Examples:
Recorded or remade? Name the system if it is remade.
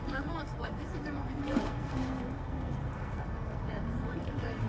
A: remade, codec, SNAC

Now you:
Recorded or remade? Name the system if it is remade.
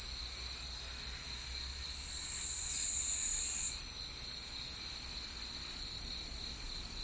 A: recorded